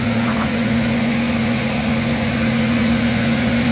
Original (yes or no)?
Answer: no